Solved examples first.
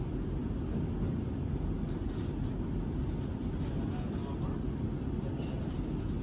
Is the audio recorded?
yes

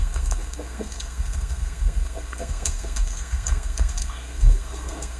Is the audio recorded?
no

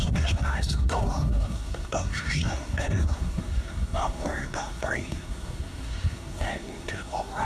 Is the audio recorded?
no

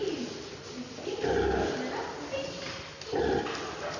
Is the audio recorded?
yes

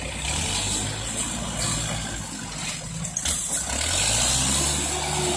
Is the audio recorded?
yes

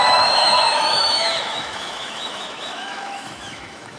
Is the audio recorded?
no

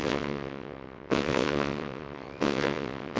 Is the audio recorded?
no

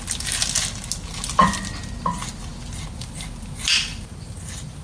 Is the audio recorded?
yes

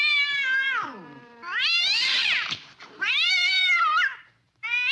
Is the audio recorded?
no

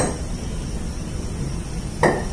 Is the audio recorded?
yes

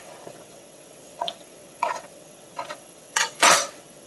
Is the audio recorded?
no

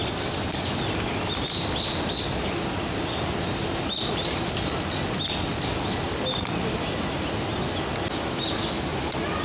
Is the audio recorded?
yes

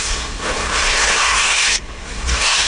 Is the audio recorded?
no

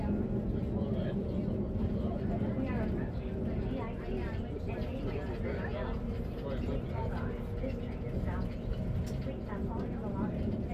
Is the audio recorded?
yes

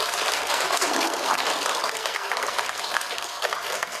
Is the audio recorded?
no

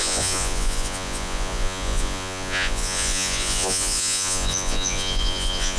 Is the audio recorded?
no